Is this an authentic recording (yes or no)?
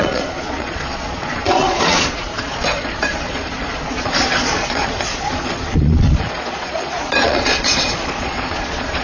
no